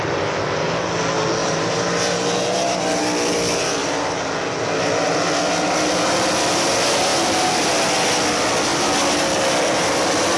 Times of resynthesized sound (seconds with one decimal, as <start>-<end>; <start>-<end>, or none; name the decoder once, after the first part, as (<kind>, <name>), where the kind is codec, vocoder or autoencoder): 1.4-3.0 (vocoder, BigVGAN v2); 3.8-4.3